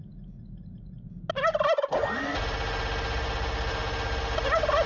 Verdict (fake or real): real